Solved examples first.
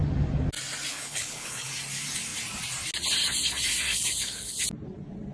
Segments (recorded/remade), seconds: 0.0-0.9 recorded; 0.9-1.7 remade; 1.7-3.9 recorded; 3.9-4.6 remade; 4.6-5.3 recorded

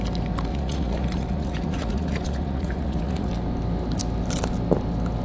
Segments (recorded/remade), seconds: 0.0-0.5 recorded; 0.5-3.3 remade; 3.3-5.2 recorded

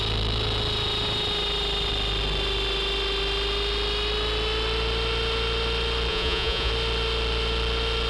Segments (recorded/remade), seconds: 0.0-6.1 recorded; 6.1-6.7 remade; 6.7-8.1 recorded

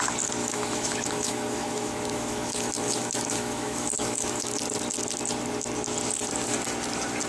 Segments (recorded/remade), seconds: 0.0-0.4 recorded; 0.4-4.6 remade; 4.6-7.3 recorded

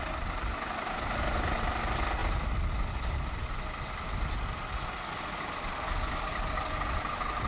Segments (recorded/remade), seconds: 0.0-7.5 recorded

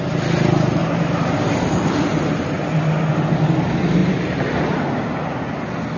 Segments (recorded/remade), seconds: 0.0-0.8 recorded; 0.8-2.6 remade; 2.6-4.0 recorded; 4.0-4.5 remade; 4.5-6.0 recorded